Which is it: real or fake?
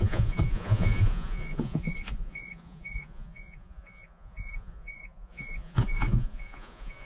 fake